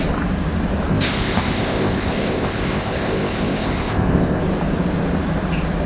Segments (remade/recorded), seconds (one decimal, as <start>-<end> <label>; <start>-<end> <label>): 0.0-0.9 recorded; 0.9-4.4 remade; 4.4-5.9 recorded

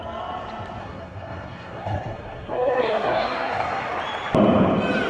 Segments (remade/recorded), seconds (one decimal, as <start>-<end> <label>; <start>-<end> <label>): 0.0-0.8 recorded; 0.8-3.9 remade; 3.9-5.1 recorded

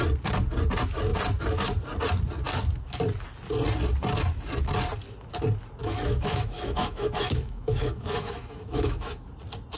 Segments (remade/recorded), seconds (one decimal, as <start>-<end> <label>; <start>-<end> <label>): 0.0-5.8 recorded; 5.8-9.3 remade; 9.3-9.8 recorded

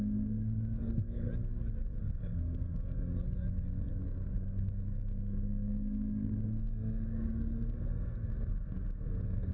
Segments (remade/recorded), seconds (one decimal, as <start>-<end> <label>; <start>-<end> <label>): 0.0-1.3 remade; 1.3-2.0 recorded; 2.0-3.1 remade; 3.1-3.8 recorded; 3.8-9.5 remade